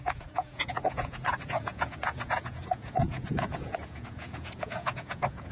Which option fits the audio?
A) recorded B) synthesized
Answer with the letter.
B